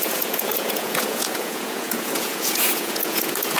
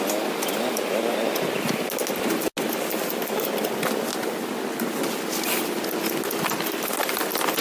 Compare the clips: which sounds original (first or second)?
second